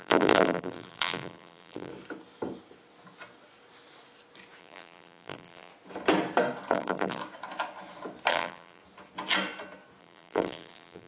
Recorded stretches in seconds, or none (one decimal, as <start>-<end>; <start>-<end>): 1.9-4.6; 5.7-6.7; 7.2-8.3; 8.8-10.0